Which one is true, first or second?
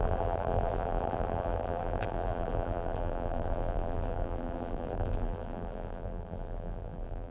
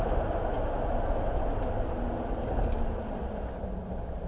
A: second